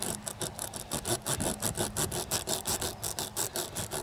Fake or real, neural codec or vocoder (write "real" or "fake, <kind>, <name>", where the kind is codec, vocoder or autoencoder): real